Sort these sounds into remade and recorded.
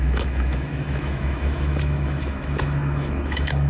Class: remade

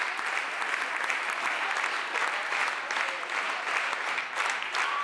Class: recorded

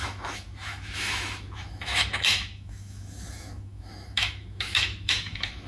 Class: remade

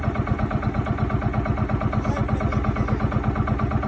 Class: recorded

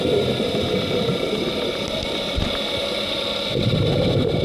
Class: recorded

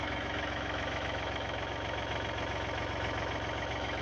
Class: remade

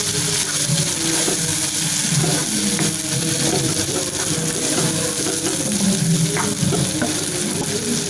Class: recorded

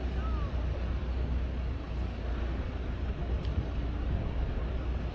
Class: recorded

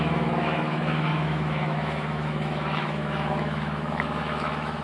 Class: remade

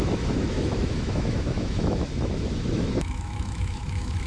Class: remade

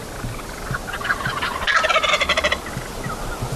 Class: recorded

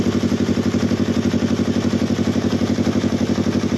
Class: recorded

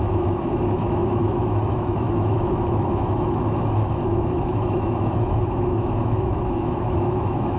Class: remade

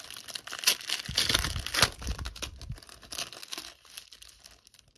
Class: recorded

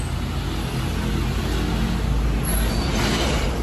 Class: recorded